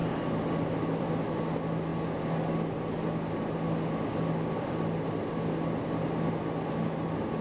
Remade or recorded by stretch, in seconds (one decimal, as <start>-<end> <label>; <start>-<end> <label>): 0.0-7.4 recorded